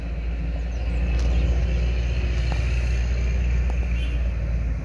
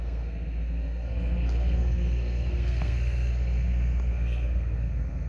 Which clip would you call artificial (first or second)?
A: second